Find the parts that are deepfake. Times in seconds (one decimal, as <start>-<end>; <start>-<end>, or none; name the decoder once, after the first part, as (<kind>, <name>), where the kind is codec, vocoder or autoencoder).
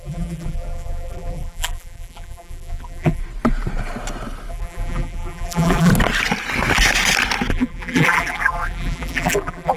0.0-3.2 (vocoder, BigVGAN v2); 4.5-5.9; 7.5-9.8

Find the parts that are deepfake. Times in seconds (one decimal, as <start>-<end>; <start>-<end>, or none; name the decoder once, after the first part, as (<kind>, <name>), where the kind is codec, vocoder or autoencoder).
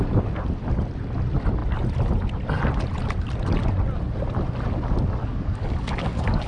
5.2-6.5 (codec, DAC)